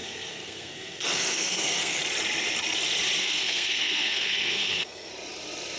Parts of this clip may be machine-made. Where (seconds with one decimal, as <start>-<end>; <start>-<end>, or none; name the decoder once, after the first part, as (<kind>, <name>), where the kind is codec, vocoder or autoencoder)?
0.0-2.0 (codec, SNAC); 3.2-5.1